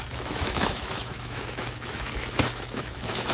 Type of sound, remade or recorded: remade